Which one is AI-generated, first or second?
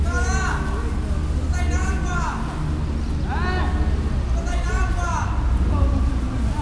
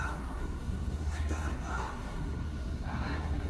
second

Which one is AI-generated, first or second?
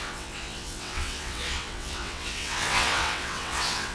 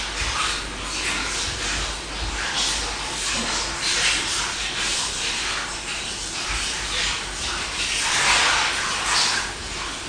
first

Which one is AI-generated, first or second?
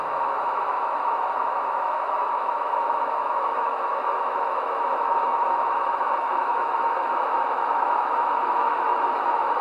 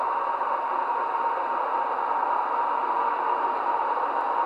first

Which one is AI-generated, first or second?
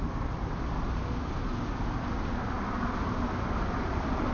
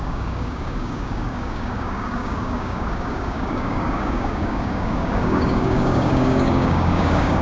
second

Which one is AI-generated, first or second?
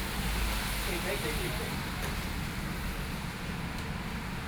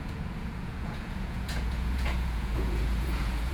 second